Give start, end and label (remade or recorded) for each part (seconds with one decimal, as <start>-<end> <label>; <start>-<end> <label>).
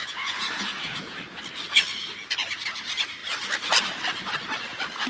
0.0-1.4 remade; 1.4-5.1 recorded